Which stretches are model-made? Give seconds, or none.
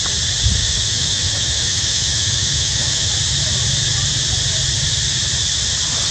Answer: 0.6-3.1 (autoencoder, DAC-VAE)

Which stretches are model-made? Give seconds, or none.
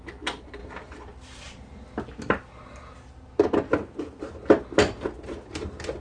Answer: none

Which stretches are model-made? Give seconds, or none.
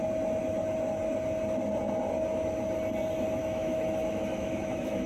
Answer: 3.4-5.1 (autoencoder, DAC-VAE)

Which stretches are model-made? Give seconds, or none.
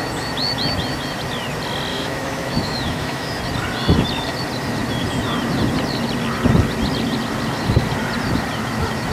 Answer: 1.9-3.4 (autoencoder, DAC-VAE)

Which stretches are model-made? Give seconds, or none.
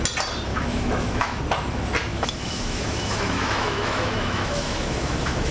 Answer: 0.5-1.4 (autoencoder, DAC-VAE); 2.1-5.5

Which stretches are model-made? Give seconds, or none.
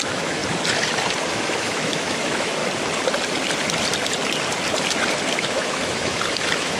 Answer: 0.0-0.4 (autoencoder, DAC-VAE); 1.3-2.6; 5.3-6.8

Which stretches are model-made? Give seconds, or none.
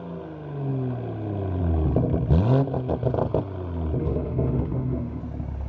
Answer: 4.0-5.2 (autoencoder, DAC-VAE)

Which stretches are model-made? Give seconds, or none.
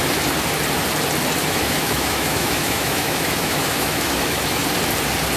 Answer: 1.4-4.6 (autoencoder, DAC-VAE)